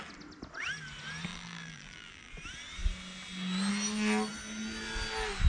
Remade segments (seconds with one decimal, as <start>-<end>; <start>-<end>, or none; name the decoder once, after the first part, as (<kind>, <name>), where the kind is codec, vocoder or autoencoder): 1.3-2.3 (vocoder, BigVGAN v2)